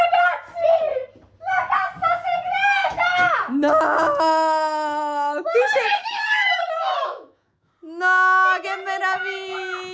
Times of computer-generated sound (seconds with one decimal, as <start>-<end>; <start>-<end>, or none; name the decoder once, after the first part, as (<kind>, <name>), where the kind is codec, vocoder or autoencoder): 2.8-7.7 (autoencoder, DAC-VAE)